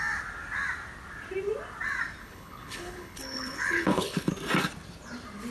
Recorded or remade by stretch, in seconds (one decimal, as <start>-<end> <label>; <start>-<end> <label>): 0.0-2.2 recorded; 2.2-4.3 remade; 4.3-5.5 recorded

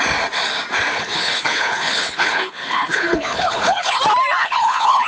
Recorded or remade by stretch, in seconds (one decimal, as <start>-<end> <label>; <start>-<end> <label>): 0.0-0.9 recorded; 0.9-4.0 remade; 4.0-4.4 recorded; 4.4-5.1 remade

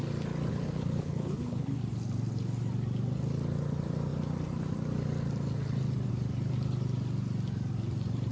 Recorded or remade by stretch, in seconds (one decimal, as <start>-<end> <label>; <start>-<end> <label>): 0.0-0.5 recorded; 0.5-1.8 remade; 1.8-8.3 recorded

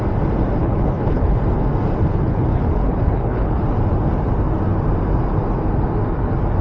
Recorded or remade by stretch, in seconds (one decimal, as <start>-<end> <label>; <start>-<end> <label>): 0.0-0.6 recorded; 0.6-1.4 remade; 1.4-2.1 recorded; 2.1-3.6 remade; 3.6-6.6 recorded

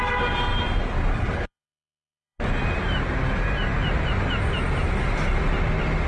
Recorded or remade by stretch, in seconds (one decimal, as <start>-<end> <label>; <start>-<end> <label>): 0.0-1.1 recorded; 1.1-2.4 remade; 2.4-6.1 recorded

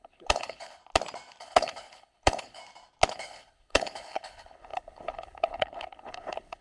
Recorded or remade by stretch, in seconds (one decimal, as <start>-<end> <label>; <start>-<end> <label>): 0.0-0.8 remade; 0.8-1.4 recorded; 1.4-2.6 remade; 2.6-3.1 recorded; 3.1-6.6 remade